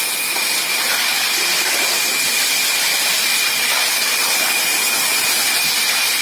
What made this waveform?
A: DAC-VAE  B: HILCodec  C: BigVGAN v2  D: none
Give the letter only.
D